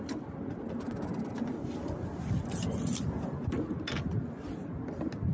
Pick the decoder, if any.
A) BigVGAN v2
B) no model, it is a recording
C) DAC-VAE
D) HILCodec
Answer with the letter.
B